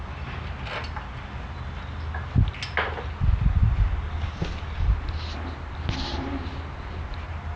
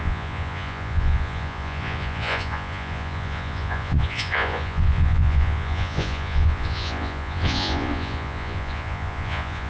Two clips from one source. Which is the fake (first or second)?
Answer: second